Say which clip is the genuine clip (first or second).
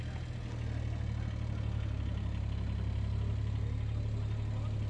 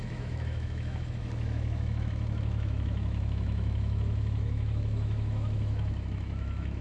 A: first